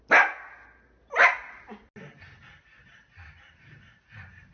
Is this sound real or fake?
real